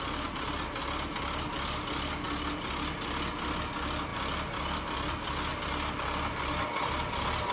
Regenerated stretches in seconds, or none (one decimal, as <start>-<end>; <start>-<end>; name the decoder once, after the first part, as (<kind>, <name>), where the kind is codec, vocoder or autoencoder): none